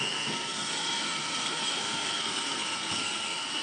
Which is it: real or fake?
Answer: fake